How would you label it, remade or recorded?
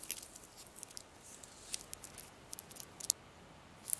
recorded